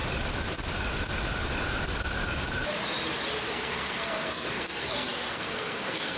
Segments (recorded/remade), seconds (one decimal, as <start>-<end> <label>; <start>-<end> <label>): 0.0-3.5 recorded; 3.5-6.2 remade